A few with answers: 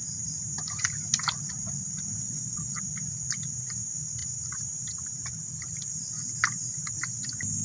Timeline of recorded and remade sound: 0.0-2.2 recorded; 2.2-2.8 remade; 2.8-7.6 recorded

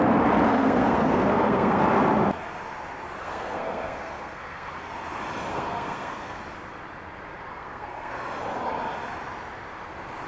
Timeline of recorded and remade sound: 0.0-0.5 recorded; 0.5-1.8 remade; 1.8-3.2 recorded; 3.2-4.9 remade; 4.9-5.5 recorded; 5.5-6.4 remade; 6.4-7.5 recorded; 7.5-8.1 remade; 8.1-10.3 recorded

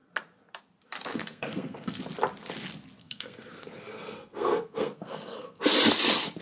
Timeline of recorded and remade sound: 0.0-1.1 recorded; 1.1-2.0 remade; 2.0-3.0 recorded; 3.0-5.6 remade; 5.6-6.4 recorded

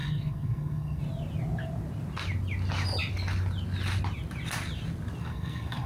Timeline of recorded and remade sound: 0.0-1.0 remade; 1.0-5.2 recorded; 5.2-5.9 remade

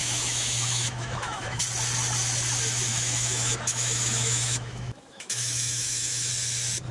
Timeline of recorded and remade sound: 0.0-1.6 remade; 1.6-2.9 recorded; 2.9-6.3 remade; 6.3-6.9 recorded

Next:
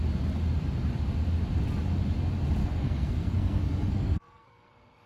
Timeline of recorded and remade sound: 0.0-2.6 recorded; 2.6-5.1 remade

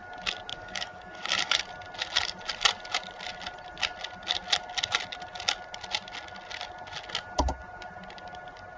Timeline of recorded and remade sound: 0.0-0.5 recorded; 0.5-1.6 remade; 1.6-8.8 recorded